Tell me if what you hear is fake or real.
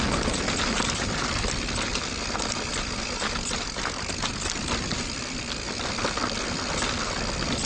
real